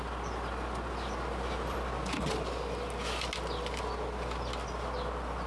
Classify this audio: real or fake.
real